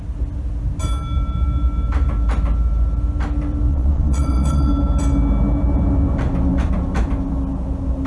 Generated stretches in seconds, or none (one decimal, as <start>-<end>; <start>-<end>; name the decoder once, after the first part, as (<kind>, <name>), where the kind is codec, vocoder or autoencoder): 3.7-4.7 (vocoder, Vocos)